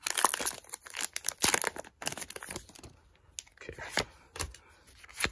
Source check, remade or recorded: recorded